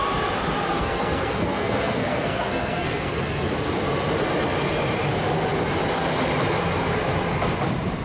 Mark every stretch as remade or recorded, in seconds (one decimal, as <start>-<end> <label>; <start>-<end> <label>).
0.0-0.7 recorded; 0.7-3.2 remade; 3.2-8.0 recorded